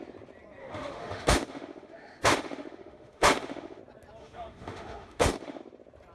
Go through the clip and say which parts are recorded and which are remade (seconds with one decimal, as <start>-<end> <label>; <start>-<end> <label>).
0.0-0.6 recorded; 0.6-3.8 remade; 3.8-4.2 recorded; 4.2-5.6 remade; 5.6-6.1 recorded

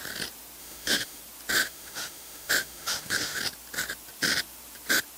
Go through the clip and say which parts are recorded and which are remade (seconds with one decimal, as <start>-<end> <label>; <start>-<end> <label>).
0.0-0.6 recorded; 0.6-1.2 remade; 1.2-1.6 recorded; 1.6-3.4 remade; 3.4-5.2 recorded

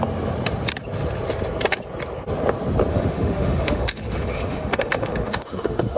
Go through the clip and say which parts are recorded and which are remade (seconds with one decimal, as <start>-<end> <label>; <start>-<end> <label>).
0.0-2.9 recorded; 2.9-6.0 remade

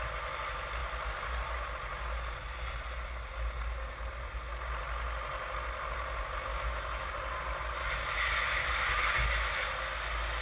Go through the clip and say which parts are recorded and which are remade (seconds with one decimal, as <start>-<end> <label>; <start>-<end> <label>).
0.0-6.5 recorded; 6.5-7.1 remade; 7.1-8.0 recorded; 8.0-9.5 remade; 9.5-10.4 recorded